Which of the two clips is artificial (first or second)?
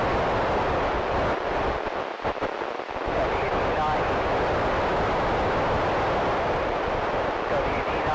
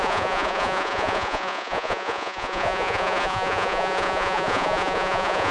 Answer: second